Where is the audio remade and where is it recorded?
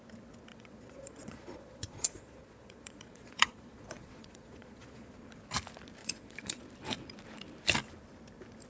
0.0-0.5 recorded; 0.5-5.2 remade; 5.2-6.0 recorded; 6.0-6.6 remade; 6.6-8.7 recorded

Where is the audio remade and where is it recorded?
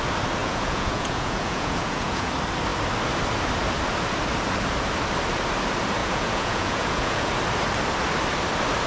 0.0-0.4 recorded; 0.4-2.3 remade; 2.3-6.0 recorded; 6.0-7.3 remade; 7.3-8.9 recorded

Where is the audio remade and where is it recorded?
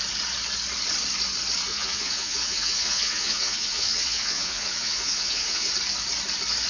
0.0-1.7 recorded; 1.7-5.7 remade; 5.7-6.7 recorded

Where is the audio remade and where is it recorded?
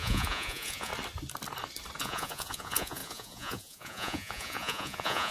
0.0-0.9 remade; 0.9-2.0 recorded; 2.0-5.3 remade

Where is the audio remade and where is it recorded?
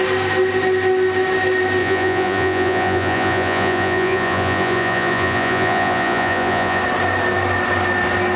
0.0-1.8 recorded; 1.8-6.8 remade; 6.8-8.4 recorded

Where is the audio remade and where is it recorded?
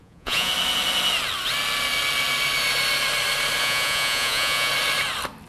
0.0-0.5 remade; 0.5-3.6 recorded; 3.6-4.7 remade; 4.7-5.5 recorded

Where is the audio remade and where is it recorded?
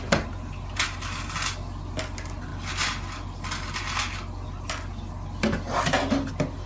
0.0-6.7 recorded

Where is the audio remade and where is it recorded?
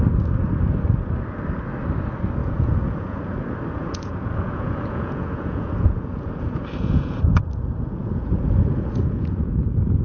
0.0-2.4 recorded; 2.4-3.2 remade; 3.2-3.8 recorded; 3.8-7.5 remade; 7.5-8.0 recorded; 8.0-10.0 remade